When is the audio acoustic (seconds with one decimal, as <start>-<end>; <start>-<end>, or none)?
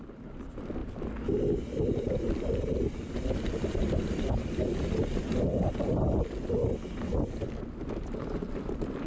0.8-4.4; 5.5-7.6